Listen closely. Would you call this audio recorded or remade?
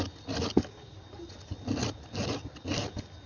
recorded